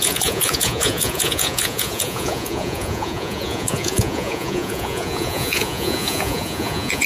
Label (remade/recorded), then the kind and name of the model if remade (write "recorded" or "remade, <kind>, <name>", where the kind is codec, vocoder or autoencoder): remade, vocoder, Vocos